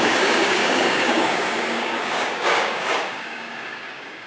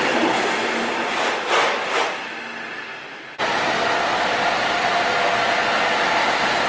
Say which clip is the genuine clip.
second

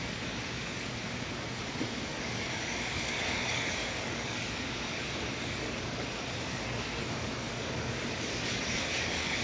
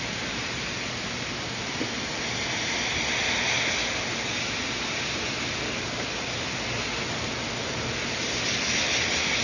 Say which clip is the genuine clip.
second